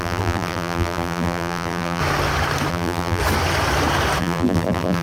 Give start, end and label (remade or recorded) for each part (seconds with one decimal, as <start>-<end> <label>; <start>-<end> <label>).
0.0-2.0 remade; 2.0-2.7 recorded; 2.7-3.2 remade; 3.2-4.2 recorded; 4.2-5.0 remade